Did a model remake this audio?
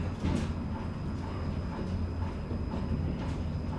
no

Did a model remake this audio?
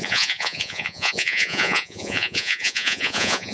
yes